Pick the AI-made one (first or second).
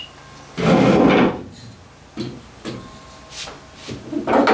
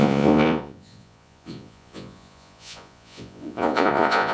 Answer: second